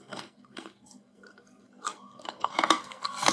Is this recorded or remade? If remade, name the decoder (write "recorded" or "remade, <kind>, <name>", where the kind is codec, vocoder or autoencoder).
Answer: remade, codec, SNAC